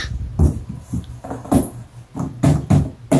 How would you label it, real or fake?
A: real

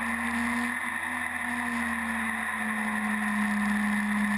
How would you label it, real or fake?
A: real